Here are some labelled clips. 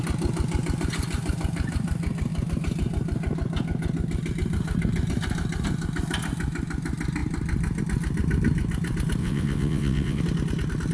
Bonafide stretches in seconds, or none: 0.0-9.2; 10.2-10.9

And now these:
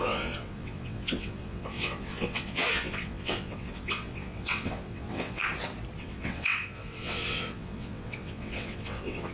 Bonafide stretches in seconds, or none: 5.4-6.0

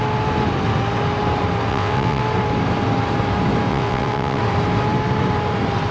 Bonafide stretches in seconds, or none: 0.0-1.7; 2.2-3.7; 4.4-5.9

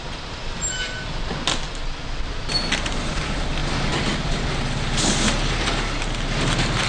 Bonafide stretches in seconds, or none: 0.0-6.9

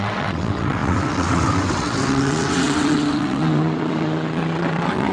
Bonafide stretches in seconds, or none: none

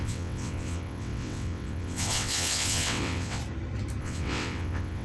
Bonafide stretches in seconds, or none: 3.4-4.0

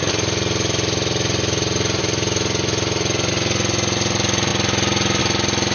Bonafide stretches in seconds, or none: 0.0-5.7